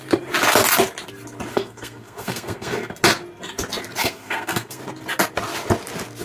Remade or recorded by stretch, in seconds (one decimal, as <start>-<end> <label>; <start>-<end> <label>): 0.0-1.5 recorded; 1.5-2.9 remade; 2.9-4.0 recorded; 4.0-4.8 remade; 4.8-6.2 recorded